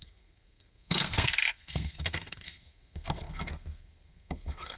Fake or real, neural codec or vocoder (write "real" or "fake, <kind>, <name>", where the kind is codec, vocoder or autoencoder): fake, codec, SNAC